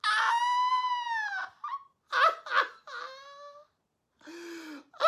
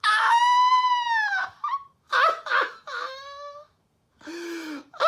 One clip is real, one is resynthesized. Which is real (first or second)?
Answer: first